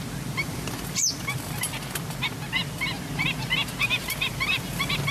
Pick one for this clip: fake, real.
real